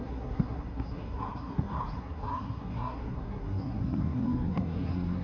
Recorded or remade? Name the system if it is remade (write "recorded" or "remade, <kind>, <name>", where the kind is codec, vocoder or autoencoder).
remade, codec, SNAC